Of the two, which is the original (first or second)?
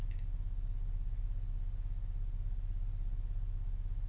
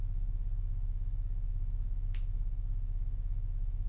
first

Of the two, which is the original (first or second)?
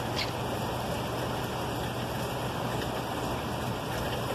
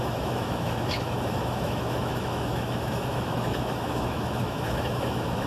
first